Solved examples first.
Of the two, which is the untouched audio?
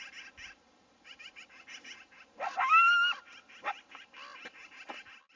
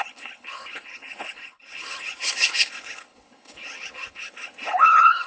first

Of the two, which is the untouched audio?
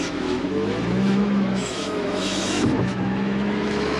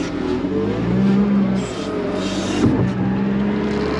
second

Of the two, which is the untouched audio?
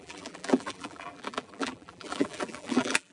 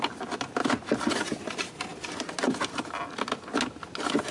second